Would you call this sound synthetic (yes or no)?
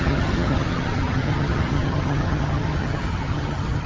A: yes